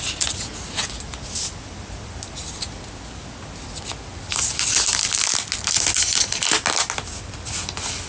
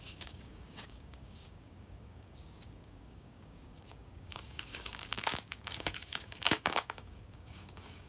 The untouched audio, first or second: first